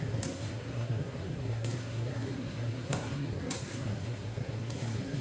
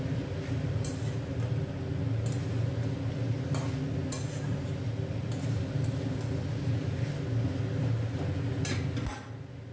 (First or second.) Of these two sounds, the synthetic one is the first